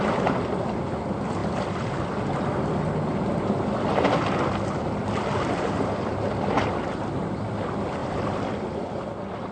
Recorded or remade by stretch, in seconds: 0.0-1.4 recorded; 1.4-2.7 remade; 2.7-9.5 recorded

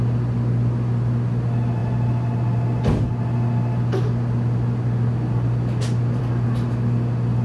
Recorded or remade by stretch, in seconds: 0.0-7.4 recorded

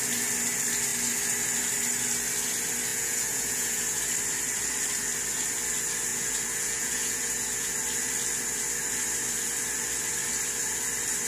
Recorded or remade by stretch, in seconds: 0.0-2.9 recorded; 2.9-4.0 remade; 4.0-6.1 recorded; 6.1-7.7 remade; 7.7-11.3 recorded

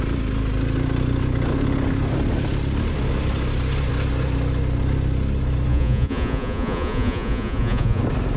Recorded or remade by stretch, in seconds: 0.0-5.7 recorded; 5.7-8.0 remade; 8.0-8.4 recorded

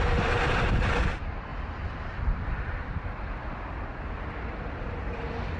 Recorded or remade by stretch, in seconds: 0.0-1.5 remade; 1.5-2.6 recorded; 2.6-3.4 remade; 3.4-5.6 recorded

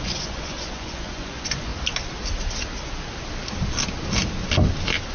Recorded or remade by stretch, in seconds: 0.0-1.7 remade; 1.7-5.1 recorded

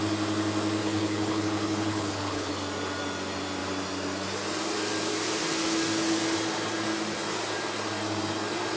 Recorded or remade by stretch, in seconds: 0.0-0.8 recorded; 0.8-2.5 remade; 2.5-8.8 recorded

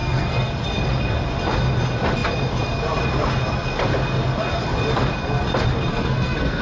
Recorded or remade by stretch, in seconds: 0.0-0.5 remade; 0.5-5.9 recorded; 5.9-6.6 remade